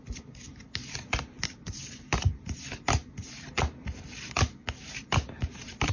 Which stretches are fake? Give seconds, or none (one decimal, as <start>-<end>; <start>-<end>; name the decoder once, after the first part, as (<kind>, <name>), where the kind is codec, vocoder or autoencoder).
none

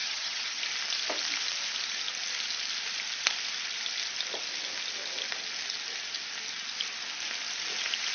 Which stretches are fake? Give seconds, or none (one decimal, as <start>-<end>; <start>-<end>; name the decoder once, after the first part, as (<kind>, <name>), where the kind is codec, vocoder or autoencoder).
0.0-0.6 (vocoder, HiFi-GAN)

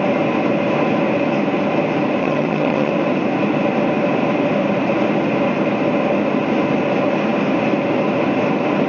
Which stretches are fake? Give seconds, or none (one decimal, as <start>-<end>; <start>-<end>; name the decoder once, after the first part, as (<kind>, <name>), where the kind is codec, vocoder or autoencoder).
2.2-2.9 (vocoder, HiFi-GAN)

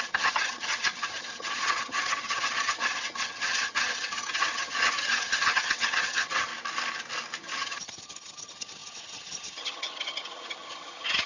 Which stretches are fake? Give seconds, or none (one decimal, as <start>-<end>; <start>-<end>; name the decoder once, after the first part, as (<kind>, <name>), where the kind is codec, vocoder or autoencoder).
0.0-6.5 (vocoder, HiFi-GAN); 7.4-11.3

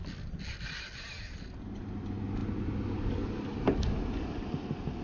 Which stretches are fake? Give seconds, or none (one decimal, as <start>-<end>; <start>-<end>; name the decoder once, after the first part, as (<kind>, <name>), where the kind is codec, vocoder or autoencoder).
none

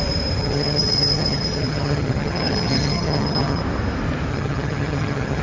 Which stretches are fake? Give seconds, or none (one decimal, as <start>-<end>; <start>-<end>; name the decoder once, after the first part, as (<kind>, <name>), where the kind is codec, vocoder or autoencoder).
0.4-3.6 (vocoder, HiFi-GAN); 4.3-5.4

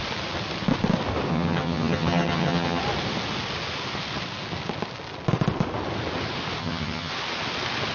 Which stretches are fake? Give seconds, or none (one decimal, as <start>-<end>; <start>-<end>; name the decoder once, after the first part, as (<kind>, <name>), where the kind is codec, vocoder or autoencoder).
1.3-2.8 (vocoder, HiFi-GAN); 6.6-7.1

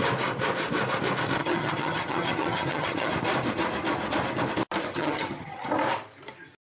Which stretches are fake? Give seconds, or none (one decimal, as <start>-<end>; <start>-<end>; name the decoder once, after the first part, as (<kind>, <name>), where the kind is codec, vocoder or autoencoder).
1.4-3.1 (vocoder, HiFi-GAN); 4.9-5.7